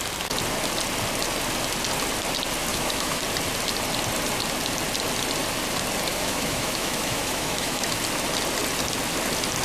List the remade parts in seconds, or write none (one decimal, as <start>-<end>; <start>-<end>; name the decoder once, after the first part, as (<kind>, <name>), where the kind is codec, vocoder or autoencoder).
2.7-3.2 (autoencoder, DAC-VAE); 6.1-8.0